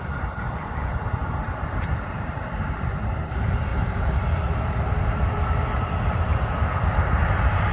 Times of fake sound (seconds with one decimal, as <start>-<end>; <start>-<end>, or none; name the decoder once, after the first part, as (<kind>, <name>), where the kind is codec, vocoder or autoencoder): none